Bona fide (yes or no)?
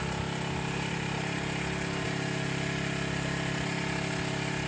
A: yes